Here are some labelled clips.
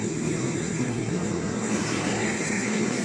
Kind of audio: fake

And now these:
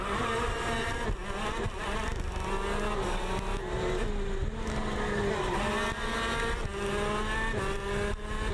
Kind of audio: real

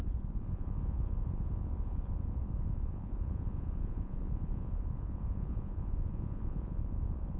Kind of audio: fake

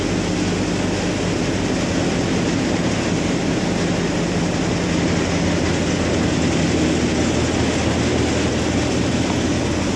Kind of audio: real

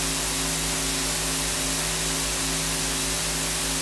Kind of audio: real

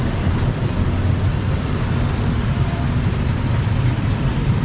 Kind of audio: fake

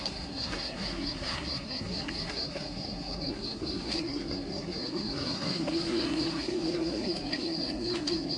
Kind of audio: fake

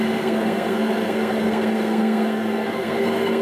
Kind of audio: fake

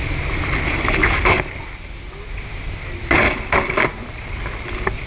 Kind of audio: real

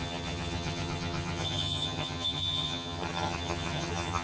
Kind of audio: fake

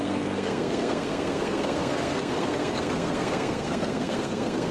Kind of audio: fake